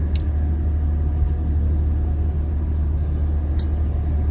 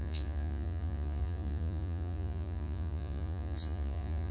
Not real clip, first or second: second